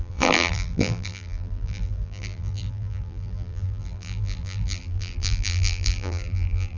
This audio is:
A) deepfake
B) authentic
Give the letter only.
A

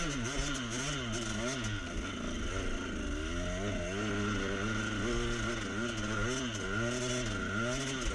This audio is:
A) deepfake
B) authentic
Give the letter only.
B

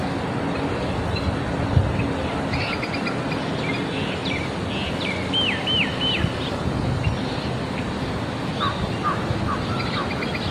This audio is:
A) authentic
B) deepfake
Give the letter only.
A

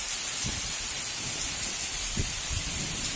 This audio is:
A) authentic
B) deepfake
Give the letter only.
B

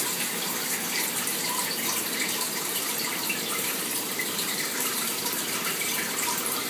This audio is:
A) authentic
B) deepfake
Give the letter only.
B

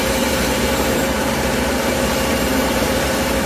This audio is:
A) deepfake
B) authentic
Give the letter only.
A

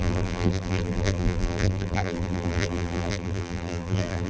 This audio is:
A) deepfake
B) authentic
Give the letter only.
A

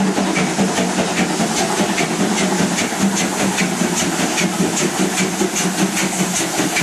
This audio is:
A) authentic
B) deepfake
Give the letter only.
A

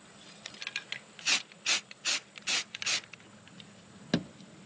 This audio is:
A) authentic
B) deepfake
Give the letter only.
A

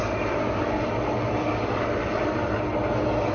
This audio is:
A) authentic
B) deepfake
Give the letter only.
A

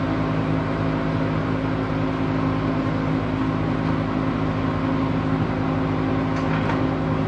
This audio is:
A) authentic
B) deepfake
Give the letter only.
A